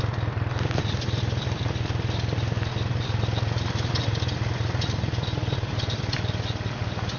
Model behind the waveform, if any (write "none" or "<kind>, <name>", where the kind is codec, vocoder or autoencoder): none